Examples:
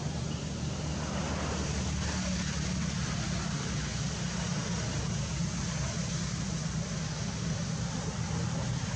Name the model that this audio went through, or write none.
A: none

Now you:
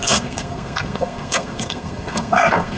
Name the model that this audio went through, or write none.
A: codec, SNAC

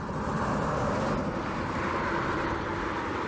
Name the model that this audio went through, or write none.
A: none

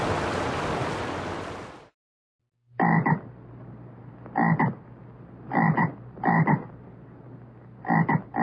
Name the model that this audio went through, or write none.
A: none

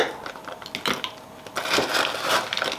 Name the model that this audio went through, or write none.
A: none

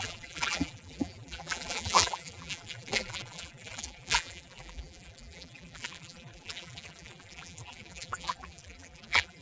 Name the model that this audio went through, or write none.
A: vocoder, BigVGAN v2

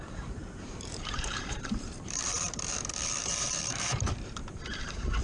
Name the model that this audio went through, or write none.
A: vocoder, BigVGAN v2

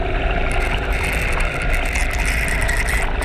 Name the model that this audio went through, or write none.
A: none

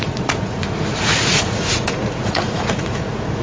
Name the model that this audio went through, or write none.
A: vocoder, Vocos